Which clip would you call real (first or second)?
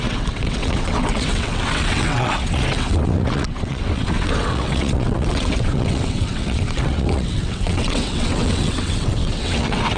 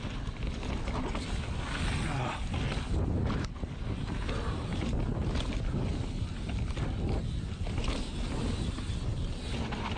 second